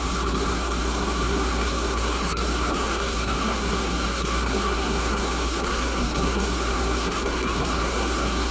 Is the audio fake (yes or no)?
yes